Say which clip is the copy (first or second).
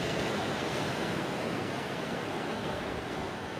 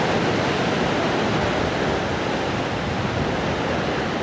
first